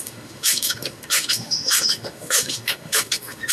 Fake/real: fake